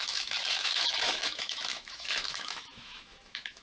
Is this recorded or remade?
remade